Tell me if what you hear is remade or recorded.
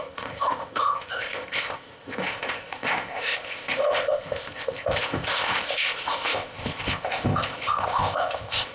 remade